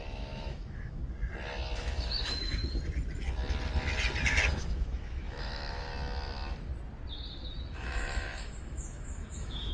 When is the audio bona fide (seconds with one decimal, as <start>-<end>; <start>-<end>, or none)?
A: 1.0-1.8; 2.6-4.5; 5.9-7.5